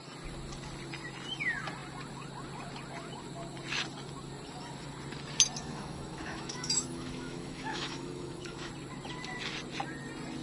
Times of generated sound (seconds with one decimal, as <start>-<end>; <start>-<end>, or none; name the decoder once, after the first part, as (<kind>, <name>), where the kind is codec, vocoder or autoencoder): 5.6-8.7 (autoencoder, DAC-VAE)